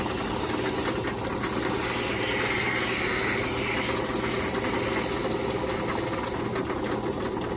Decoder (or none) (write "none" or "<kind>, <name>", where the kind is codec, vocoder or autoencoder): none